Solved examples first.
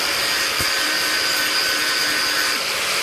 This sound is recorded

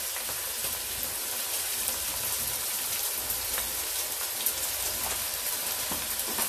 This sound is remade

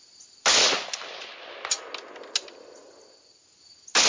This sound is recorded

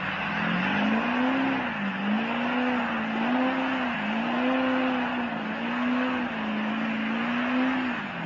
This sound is recorded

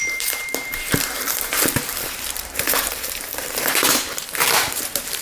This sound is remade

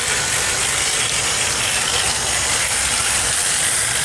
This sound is recorded